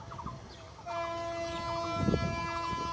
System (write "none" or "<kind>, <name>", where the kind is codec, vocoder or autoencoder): none